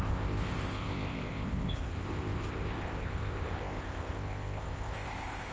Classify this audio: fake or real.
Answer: fake